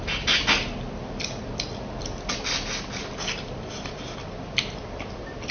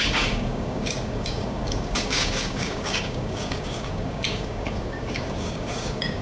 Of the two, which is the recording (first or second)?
first